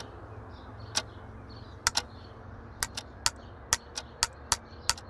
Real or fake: real